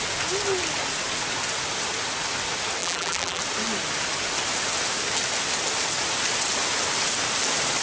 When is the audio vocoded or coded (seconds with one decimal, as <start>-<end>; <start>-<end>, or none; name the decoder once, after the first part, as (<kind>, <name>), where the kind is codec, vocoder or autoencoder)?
2.8-3.4 (vocoder, BigVGAN v2)